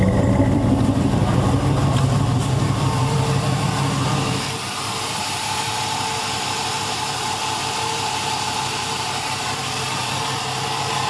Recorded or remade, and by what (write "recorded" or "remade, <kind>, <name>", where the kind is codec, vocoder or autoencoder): remade, vocoder, BigVGAN v2